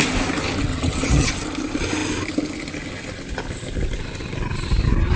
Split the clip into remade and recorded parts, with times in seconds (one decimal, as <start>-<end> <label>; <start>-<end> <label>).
0.0-0.7 recorded; 0.7-1.3 remade; 1.3-5.2 recorded